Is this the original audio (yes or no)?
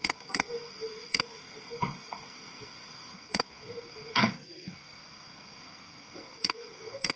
no